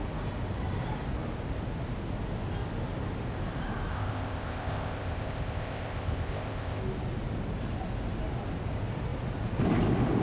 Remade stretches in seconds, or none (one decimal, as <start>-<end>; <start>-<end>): 3.9-6.8